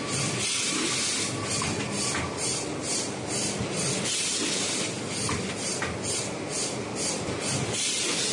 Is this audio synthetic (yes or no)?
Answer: no